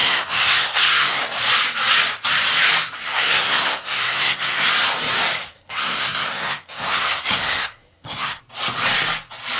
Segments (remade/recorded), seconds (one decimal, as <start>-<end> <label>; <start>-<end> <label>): 0.0-1.2 remade; 1.2-3.1 recorded; 3.1-4.7 remade; 4.7-5.4 recorded; 5.4-8.4 remade; 8.4-9.6 recorded